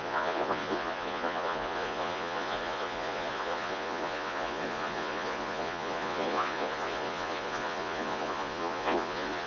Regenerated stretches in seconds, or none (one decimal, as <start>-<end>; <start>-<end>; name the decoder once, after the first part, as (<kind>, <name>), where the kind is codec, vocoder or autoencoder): 0.0-9.5 (vocoder, Vocos)